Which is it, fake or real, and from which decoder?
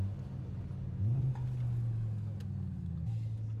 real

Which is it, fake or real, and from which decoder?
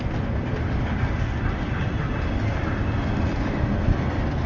real